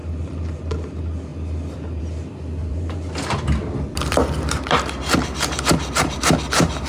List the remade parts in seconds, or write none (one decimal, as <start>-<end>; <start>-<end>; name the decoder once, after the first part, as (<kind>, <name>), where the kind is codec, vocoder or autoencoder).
0.0-0.6 (vocoder, BigVGAN v2); 2.6-6.4